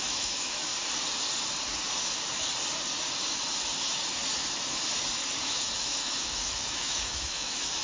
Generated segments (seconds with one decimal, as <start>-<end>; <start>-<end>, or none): 0.0-0.7; 5.4-7.8